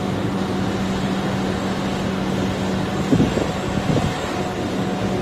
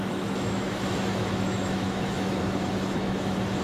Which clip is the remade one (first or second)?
second